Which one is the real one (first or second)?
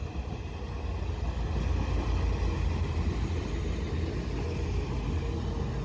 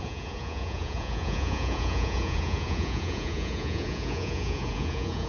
first